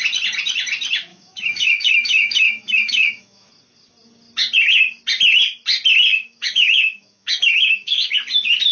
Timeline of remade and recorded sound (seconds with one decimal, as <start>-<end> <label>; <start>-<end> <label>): 0.0-1.1 recorded; 1.1-3.5 remade; 3.5-6.1 recorded; 6.1-8.1 remade; 8.1-8.7 recorded